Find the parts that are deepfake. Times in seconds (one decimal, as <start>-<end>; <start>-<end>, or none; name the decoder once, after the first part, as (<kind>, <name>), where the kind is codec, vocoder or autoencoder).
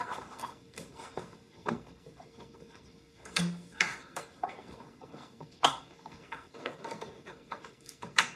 0.0-8.4 (codec, SNAC)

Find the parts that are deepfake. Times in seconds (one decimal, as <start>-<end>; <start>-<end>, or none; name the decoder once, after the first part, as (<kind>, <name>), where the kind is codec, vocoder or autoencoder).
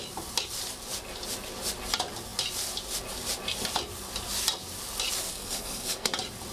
5.3-6.1 (codec, SNAC)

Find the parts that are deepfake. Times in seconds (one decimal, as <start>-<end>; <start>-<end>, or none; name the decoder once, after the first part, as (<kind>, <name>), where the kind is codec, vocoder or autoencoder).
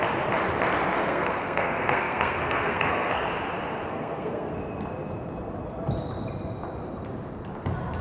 1.0-3.3 (codec, SNAC); 3.9-4.5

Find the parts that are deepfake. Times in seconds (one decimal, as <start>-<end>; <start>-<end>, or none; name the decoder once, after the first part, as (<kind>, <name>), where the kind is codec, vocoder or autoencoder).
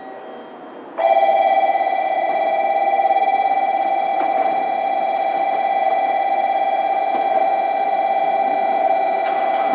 none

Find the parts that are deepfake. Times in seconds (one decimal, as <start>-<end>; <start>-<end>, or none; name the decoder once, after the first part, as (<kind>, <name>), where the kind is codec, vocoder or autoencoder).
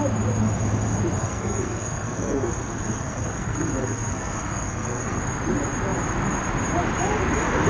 1.2-5.2 (codec, SNAC)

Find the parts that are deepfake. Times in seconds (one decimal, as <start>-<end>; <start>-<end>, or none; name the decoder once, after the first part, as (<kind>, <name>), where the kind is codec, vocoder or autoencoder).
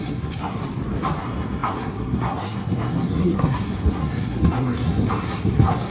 0.0-0.6 (codec, SNAC); 1.2-5.9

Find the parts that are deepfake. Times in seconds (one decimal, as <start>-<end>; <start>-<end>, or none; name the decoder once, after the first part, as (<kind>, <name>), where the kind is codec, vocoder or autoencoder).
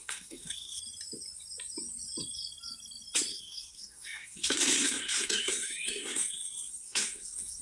0.0-0.8 (codec, SNAC); 3.3-7.6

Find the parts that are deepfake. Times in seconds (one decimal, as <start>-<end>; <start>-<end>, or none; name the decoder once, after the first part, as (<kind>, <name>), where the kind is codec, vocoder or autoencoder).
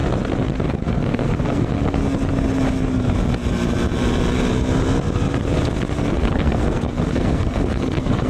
0.7-2.0 (codec, SNAC); 6.1-8.3